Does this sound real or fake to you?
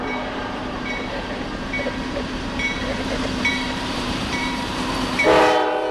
fake